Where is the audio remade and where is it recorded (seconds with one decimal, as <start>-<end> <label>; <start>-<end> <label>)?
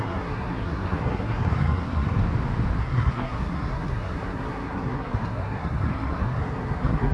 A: 0.0-2.2 remade; 2.2-2.8 recorded; 2.8-7.1 remade